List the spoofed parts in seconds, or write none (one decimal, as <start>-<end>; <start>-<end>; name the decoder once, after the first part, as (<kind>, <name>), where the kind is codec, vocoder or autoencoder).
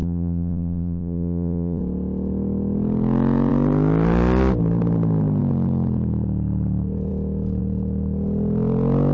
0.0-1.8 (vocoder, Vocos)